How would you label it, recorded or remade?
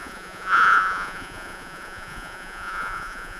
remade